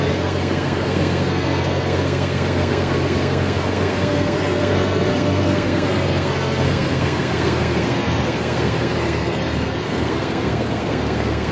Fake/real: fake